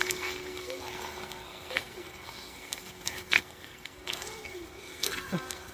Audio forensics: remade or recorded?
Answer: remade